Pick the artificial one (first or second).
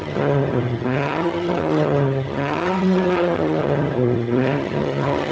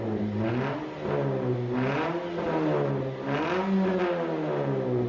first